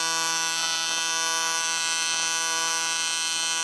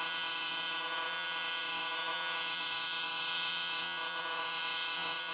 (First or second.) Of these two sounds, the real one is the first